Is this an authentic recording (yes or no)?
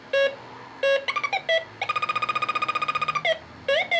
yes